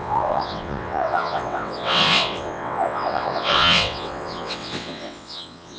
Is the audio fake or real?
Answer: fake